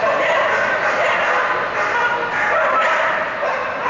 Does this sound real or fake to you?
real